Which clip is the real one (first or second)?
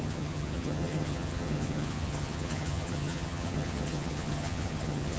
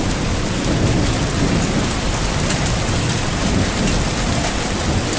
second